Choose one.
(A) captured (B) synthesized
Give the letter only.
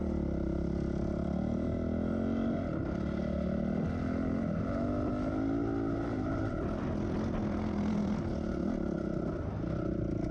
A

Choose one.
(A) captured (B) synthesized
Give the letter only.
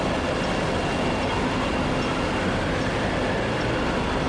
A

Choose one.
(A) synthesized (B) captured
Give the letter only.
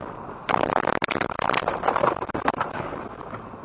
A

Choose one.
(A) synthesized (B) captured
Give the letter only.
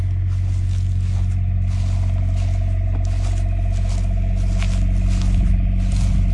B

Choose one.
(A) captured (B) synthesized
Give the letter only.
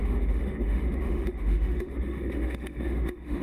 B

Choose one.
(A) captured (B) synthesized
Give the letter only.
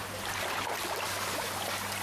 A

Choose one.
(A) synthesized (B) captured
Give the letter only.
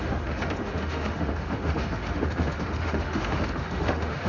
A